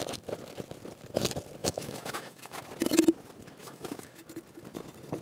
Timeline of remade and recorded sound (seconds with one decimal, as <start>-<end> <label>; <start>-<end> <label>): 0.0-1.6 recorded; 1.6-2.6 remade; 2.6-3.6 recorded; 3.6-4.2 remade; 4.2-5.2 recorded